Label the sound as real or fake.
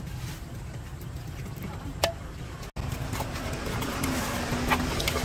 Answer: real